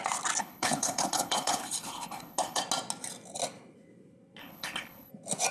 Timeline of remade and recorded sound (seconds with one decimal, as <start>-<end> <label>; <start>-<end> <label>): 0.0-0.4 recorded; 0.4-2.6 remade; 2.6-4.4 recorded; 4.4-5.1 remade; 5.1-5.5 recorded